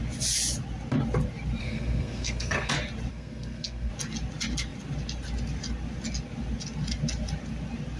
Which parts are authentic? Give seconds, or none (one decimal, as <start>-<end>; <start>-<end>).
0.0-1.6; 2.7-3.1; 3.9-8.0